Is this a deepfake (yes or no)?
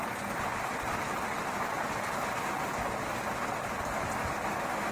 no